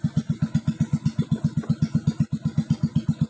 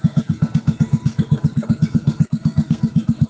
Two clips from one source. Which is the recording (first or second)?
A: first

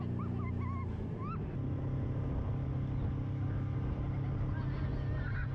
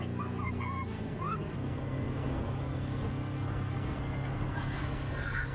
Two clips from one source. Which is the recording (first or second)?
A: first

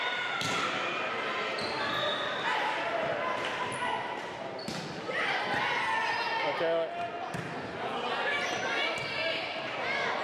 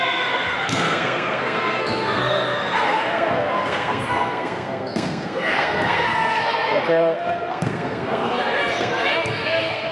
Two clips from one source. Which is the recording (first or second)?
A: first